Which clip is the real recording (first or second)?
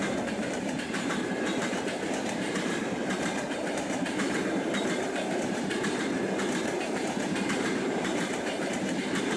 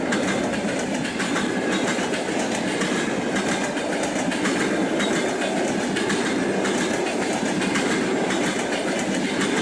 second